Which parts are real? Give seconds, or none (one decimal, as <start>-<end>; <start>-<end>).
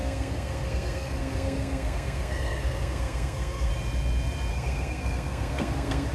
3.7-4.5